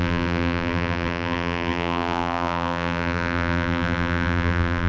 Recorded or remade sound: remade